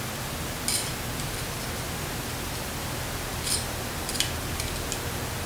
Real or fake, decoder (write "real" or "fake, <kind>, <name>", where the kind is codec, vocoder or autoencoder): real